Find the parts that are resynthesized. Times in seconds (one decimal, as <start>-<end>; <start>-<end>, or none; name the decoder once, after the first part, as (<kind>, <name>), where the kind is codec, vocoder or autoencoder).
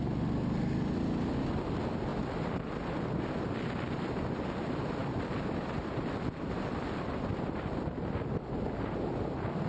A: none